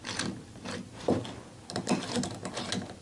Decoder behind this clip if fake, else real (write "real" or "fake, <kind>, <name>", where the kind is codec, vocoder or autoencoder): real